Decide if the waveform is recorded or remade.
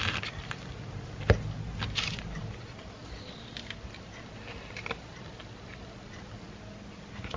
recorded